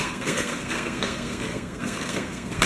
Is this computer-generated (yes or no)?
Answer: yes